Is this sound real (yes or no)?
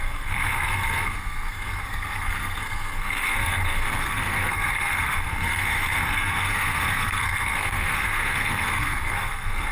no